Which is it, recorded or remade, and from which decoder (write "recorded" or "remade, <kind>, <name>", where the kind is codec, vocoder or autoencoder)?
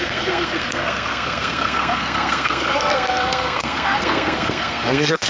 remade, codec, SNAC